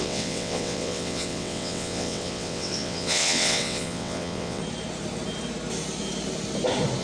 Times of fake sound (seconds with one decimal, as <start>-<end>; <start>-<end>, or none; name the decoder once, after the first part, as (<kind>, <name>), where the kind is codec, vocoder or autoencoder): 0.0-4.6 (vocoder, WaveNeXt)